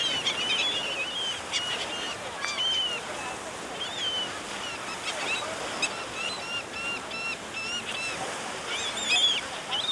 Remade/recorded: recorded